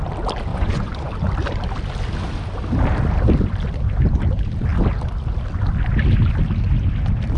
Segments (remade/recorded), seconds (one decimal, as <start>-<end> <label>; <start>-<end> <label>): 0.0-0.5 recorded; 0.5-1.1 remade; 1.1-7.4 recorded